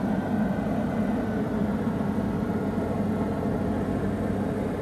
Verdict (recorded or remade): recorded